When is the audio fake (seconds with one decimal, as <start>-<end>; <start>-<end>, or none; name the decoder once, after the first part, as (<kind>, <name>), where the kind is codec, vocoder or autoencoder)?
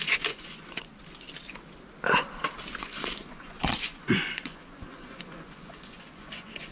0.0-0.9 (vocoder, Vocos); 2.8-6.7